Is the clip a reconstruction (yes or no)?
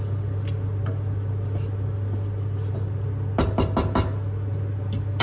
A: no